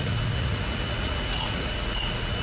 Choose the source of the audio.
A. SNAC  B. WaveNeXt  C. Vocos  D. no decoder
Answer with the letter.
C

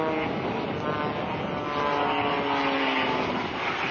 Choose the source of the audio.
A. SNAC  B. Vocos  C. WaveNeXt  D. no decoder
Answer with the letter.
D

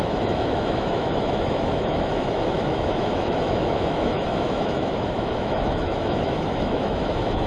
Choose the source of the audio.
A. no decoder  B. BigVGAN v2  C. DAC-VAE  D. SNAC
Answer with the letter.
C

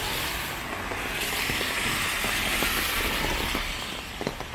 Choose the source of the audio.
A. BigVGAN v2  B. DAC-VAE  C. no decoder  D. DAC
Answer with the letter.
C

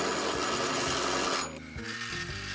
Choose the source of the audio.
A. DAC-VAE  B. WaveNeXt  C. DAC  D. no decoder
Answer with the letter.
D